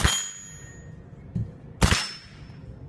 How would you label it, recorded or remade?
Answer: recorded